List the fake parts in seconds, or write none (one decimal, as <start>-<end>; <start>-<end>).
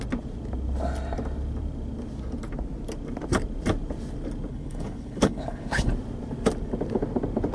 4.5-5.9